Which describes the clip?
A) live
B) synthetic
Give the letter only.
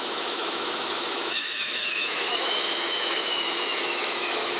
B